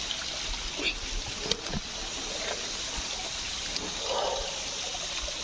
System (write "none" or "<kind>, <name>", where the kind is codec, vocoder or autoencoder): none